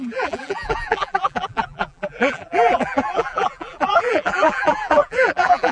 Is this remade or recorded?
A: remade